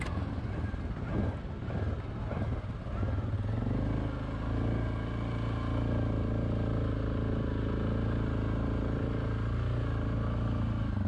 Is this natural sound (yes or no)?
yes